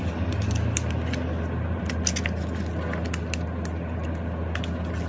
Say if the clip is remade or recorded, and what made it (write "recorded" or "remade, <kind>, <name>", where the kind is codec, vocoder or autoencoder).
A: recorded